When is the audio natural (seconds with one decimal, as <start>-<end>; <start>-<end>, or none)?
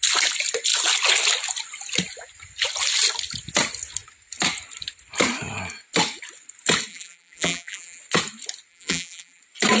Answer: 0.0-6.9; 8.0-8.7; 9.4-9.8